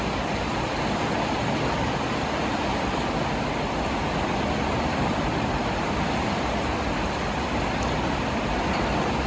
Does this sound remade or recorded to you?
recorded